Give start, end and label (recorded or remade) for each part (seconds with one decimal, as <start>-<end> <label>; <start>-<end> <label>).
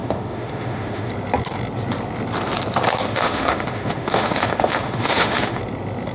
0.0-1.1 remade; 1.1-3.1 recorded; 3.1-5.6 remade; 5.6-6.1 recorded